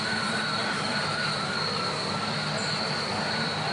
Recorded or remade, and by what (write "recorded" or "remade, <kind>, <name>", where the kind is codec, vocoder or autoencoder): recorded